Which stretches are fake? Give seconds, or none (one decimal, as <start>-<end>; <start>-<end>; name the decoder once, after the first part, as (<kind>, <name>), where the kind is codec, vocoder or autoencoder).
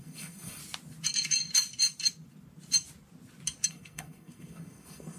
0.0-0.6 (codec, SNAC); 3.7-5.2